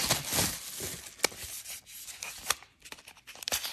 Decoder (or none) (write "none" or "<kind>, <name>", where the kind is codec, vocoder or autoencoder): none